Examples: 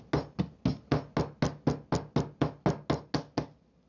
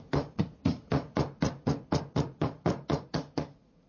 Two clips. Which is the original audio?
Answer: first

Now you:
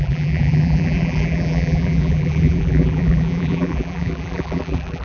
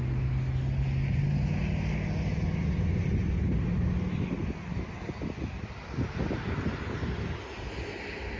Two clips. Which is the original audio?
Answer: second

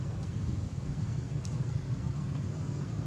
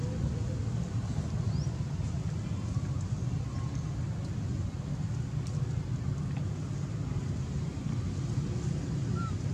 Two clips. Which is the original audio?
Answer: second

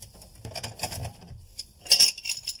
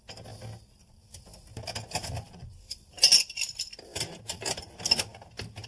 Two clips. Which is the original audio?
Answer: second